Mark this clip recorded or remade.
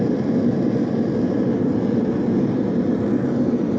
recorded